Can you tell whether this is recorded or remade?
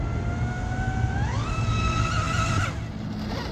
recorded